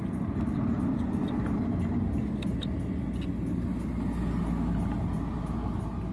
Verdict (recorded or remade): recorded